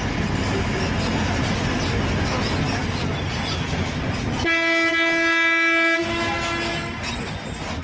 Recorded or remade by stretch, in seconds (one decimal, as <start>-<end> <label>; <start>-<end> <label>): 0.0-7.8 recorded

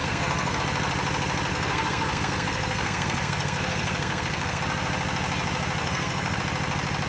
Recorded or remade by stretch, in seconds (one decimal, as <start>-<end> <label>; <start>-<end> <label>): 0.0-0.6 remade; 0.6-1.5 recorded; 1.5-4.6 remade; 4.6-5.8 recorded; 5.8-6.4 remade; 6.4-7.1 recorded

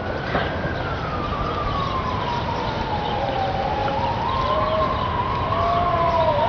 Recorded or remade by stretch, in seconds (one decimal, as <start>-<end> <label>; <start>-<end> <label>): 0.0-6.5 recorded

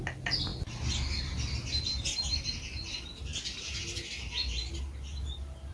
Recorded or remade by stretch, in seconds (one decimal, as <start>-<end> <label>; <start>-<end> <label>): 0.0-5.7 recorded

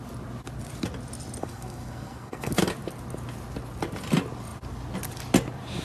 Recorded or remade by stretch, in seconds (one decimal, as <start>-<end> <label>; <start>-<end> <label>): 0.0-1.4 recorded; 1.4-2.6 remade; 2.6-5.8 recorded

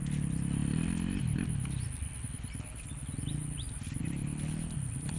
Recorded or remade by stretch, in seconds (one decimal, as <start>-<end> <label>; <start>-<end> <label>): 0.0-5.2 recorded